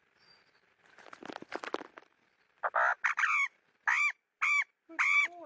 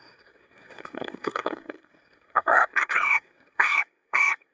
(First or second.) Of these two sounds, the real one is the first